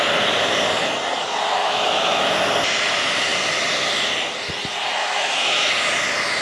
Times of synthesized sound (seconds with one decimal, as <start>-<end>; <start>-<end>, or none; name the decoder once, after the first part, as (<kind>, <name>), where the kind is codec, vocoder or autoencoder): 1.6-2.2 (autoencoder, DAC-VAE); 5.0-5.7